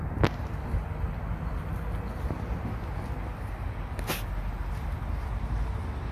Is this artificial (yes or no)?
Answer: no